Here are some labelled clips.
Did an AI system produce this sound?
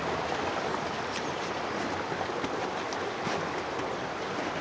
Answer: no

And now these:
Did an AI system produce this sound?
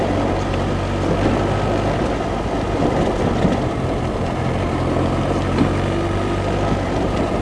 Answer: no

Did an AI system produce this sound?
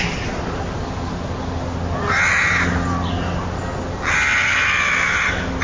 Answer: no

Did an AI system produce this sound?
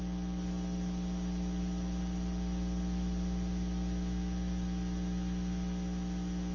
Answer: no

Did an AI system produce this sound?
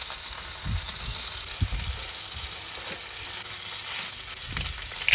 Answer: no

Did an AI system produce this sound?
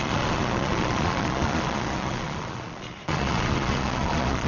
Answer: yes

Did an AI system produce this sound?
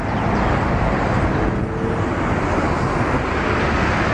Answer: no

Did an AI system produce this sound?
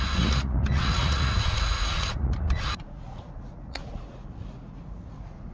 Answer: yes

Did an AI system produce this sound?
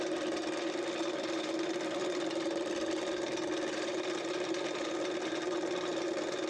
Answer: no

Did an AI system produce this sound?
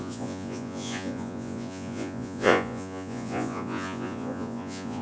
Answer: yes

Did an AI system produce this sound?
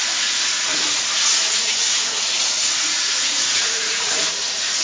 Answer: yes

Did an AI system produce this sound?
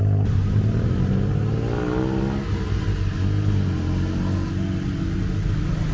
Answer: no